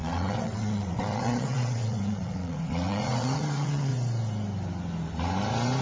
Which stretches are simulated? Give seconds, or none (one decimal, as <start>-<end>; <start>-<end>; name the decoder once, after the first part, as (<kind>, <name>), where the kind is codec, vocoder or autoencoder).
0.0-3.9 (vocoder, WaveNeXt)